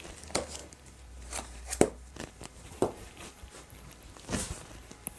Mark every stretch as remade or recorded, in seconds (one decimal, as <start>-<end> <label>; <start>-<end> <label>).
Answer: 0.0-0.6 recorded; 0.6-3.7 remade; 3.7-5.2 recorded